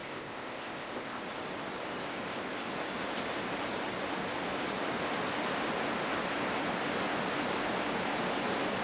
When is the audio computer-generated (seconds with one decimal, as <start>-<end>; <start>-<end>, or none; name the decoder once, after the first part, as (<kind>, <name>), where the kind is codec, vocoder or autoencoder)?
0.0-1.2 (codec, ZipCodec)